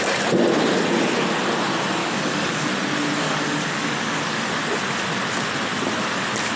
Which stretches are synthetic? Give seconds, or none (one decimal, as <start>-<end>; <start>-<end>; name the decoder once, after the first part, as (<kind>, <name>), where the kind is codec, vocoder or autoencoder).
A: 2.0-2.7 (codec, DAC); 3.2-4.2

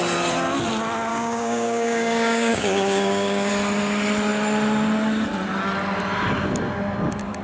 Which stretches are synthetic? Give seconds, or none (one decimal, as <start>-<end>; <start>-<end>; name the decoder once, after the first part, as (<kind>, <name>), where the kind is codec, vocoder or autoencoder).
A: 1.1-3.5 (codec, DAC)